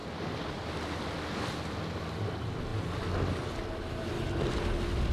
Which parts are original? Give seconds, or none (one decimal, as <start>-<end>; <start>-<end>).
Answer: 0.0-5.1